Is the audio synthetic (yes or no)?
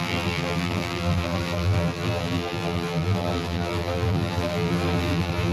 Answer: yes